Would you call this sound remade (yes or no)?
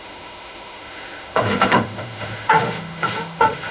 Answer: yes